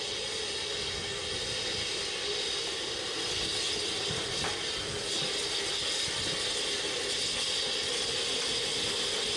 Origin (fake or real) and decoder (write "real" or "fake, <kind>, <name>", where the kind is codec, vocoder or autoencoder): real